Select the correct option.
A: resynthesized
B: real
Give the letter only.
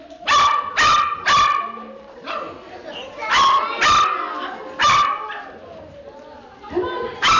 A